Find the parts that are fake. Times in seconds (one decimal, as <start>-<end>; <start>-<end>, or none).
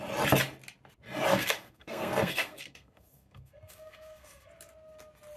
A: 1.3-4.5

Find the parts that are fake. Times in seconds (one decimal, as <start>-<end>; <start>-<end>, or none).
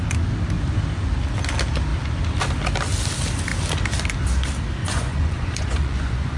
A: 4.8-6.4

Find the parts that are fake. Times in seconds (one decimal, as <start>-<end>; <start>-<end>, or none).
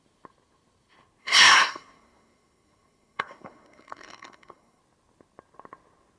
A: 1.2-4.8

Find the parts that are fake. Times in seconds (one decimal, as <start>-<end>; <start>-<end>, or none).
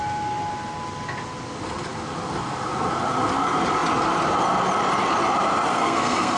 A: 5.7-6.4